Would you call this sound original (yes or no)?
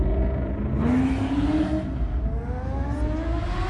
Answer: yes